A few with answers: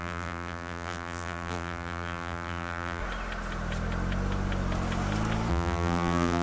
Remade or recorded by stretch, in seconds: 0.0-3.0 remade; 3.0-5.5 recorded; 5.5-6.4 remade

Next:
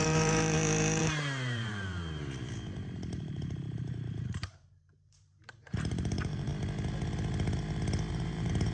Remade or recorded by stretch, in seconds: 0.0-6.5 remade; 6.5-8.1 recorded; 8.1-8.7 remade

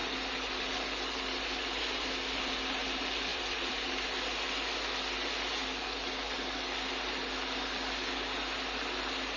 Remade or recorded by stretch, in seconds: 0.0-3.3 recorded; 3.3-3.9 remade; 3.9-9.4 recorded

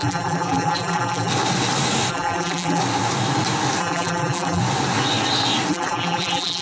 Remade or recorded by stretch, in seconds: 0.0-1.3 remade; 1.3-2.1 recorded; 2.1-2.8 remade; 2.8-3.8 recorded; 3.8-4.6 remade; 4.6-5.7 recorded; 5.7-6.6 remade

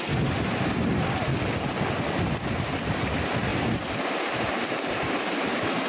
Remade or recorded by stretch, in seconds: 0.0-1.3 remade; 1.3-2.2 recorded; 2.2-5.9 remade

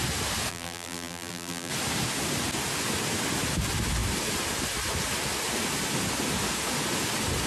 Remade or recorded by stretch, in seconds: 0.0-0.5 recorded; 0.5-1.7 remade; 1.7-7.5 recorded

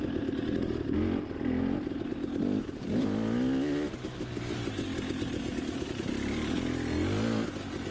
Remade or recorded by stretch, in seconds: 0.0-4.9 recorded; 4.9-6.1 remade; 6.1-7.9 recorded